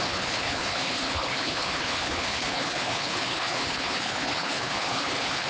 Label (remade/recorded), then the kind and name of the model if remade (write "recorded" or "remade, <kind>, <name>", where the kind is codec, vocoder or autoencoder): remade, codec, HILCodec